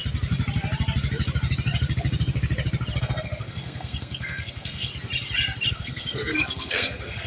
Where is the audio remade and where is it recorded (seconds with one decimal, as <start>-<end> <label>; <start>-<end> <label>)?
0.0-3.0 recorded; 3.0-4.9 remade; 4.9-5.7 recorded; 5.7-7.3 remade